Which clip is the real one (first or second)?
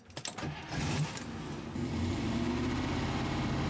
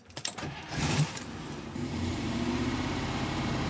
first